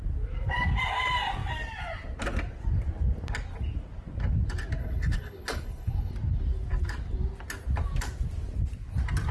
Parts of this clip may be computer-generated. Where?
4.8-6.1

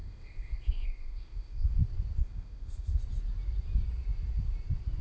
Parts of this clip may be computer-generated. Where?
0.0-1.7; 2.2-3.0

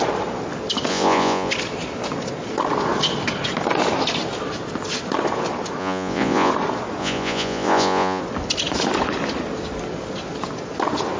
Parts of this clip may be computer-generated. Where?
0.9-1.5; 5.8-6.5; 7.0-8.2